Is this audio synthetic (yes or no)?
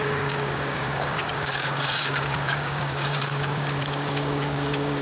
yes